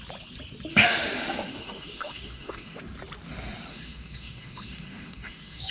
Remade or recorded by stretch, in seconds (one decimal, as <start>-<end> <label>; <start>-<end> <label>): 0.0-0.7 recorded; 0.7-2.8 remade; 2.8-3.7 recorded; 3.7-5.7 remade

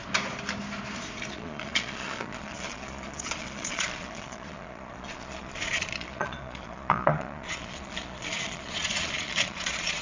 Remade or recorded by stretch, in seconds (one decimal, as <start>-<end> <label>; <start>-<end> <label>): 0.0-1.3 recorded; 1.3-10.0 remade